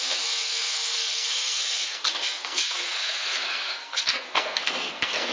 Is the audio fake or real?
fake